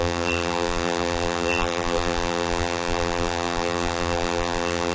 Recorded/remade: remade